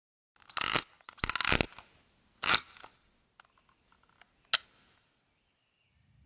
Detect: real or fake real